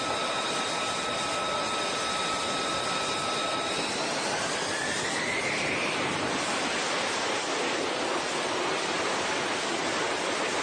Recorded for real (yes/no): yes